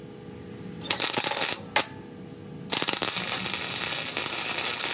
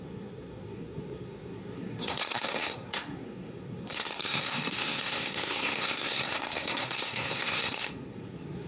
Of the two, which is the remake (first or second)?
second